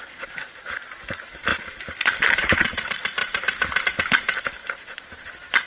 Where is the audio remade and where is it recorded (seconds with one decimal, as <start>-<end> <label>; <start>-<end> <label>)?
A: 0.0-1.5 remade; 1.5-2.0 recorded; 2.0-4.6 remade; 4.6-5.2 recorded; 5.2-5.7 remade